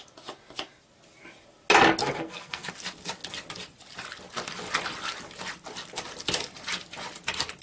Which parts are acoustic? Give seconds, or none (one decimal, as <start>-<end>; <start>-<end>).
0.0-2.0; 2.7-7.6